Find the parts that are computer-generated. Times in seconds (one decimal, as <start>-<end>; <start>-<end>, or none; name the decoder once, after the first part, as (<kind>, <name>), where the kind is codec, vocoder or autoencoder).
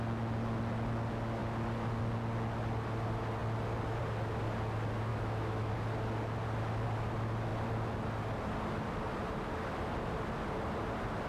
5.1-5.7 (autoencoder, DAC-VAE)